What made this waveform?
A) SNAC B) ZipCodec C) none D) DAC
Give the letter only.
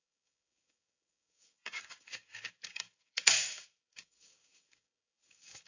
D